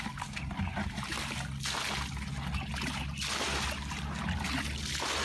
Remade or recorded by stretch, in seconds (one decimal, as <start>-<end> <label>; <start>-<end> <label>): 0.0-5.2 recorded